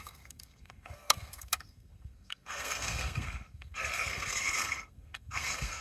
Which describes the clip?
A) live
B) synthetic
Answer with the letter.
B